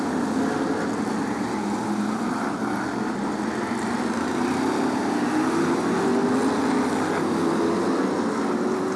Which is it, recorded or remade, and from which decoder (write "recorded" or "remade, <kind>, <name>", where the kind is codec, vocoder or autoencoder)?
recorded